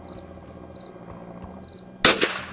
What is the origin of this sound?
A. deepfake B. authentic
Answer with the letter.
B